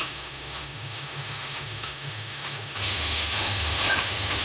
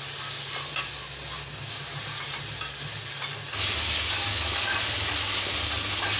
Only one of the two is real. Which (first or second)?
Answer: second